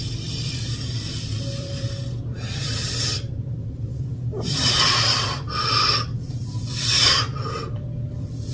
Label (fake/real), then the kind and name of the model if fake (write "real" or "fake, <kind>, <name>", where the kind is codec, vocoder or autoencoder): fake, vocoder, BigVGAN v2